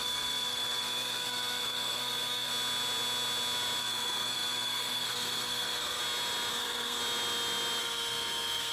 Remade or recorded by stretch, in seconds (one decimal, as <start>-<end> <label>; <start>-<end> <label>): 0.0-2.5 remade; 2.5-3.8 recorded; 3.8-6.0 remade; 6.0-6.5 recorded; 6.5-7.0 remade; 7.0-7.8 recorded; 7.8-8.7 remade

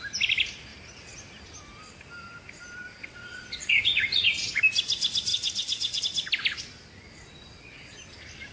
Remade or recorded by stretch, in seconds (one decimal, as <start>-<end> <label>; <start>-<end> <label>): 0.0-3.0 recorded; 3.0-4.6 remade; 4.6-5.3 recorded; 5.3-6.0 remade; 6.0-8.5 recorded